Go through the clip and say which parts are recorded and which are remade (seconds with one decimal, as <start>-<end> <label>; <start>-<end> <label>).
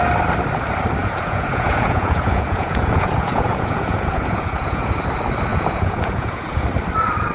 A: 0.0-1.0 recorded; 1.0-4.9 remade; 4.9-5.5 recorded; 5.5-6.6 remade; 6.6-7.3 recorded